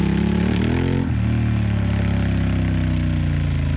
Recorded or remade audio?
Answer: recorded